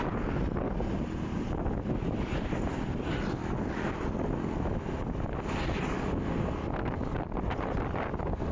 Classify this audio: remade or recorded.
recorded